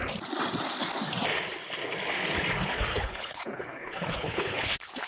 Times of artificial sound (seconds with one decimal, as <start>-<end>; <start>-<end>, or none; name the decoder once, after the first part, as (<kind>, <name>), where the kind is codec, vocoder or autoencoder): 2.9-5.1 (codec, HILCodec)